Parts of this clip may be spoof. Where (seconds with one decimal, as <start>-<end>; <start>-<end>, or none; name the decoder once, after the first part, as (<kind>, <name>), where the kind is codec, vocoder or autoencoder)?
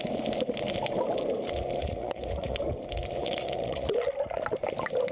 1.8-2.6 (vocoder, Vocos); 3.2-4.1